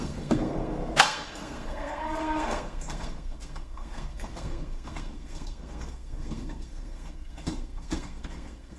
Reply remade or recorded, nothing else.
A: remade